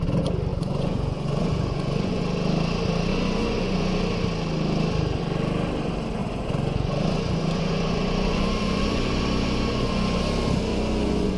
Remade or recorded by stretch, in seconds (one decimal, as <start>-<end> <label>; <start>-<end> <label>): 0.0-0.5 recorded; 0.5-2.2 remade; 2.2-3.1 recorded; 3.1-4.0 remade; 4.0-6.2 recorded; 6.2-10.2 remade; 10.2-10.7 recorded; 10.7-11.4 remade